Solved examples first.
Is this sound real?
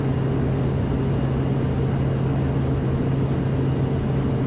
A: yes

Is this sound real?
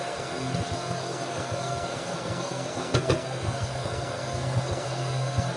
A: no